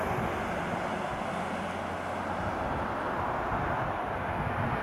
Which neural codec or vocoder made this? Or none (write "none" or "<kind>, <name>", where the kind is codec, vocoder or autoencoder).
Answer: none